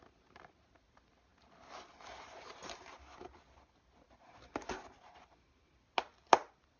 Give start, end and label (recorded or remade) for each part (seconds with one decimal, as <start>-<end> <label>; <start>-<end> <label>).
0.0-6.8 recorded